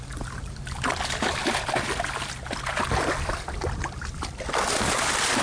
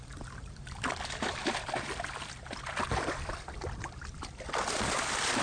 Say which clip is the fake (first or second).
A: second